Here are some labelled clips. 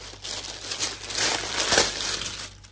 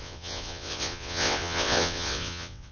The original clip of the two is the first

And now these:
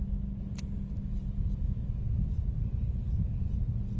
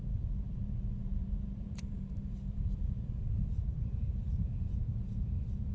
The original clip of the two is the first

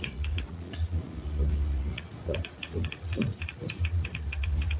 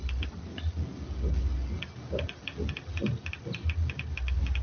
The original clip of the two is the second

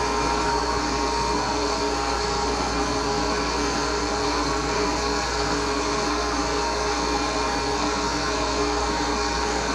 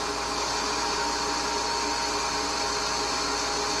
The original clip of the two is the second